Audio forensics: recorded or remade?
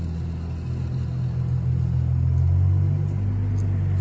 recorded